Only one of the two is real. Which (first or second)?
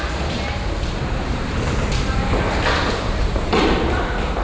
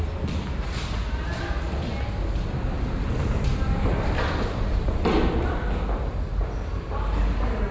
second